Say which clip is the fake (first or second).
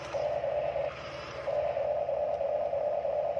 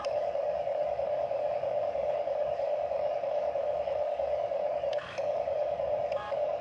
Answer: second